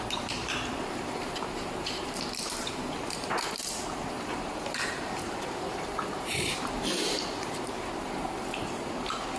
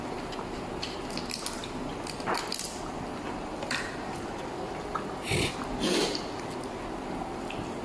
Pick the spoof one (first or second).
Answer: first